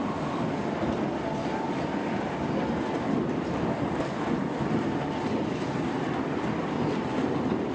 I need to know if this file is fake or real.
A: real